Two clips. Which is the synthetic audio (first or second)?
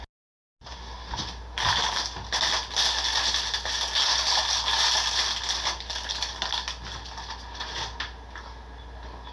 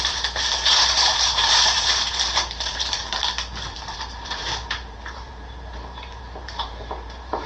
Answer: second